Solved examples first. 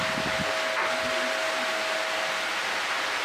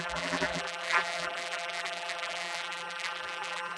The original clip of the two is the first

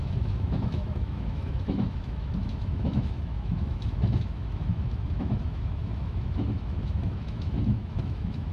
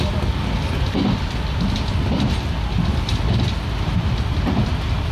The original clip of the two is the second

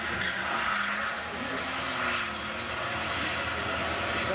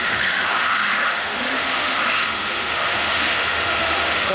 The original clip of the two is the first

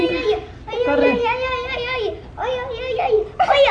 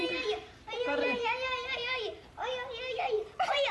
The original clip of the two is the first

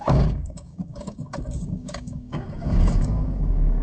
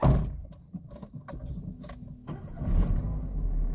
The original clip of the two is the second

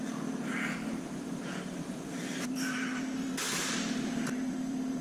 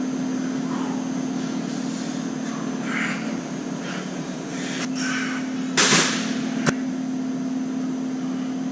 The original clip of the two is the second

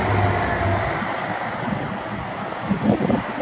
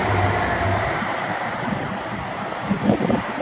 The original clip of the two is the first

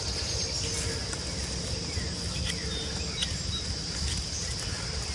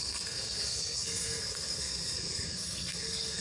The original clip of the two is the first